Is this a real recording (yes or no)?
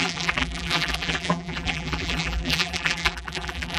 no